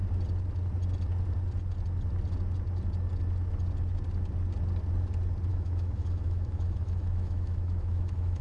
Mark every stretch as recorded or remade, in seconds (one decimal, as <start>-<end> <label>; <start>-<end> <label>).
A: 0.0-5.5 recorded; 5.5-8.4 remade